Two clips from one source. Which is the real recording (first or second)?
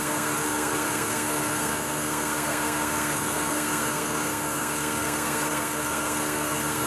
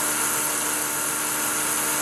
second